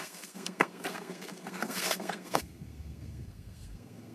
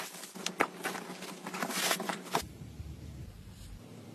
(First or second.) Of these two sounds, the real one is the second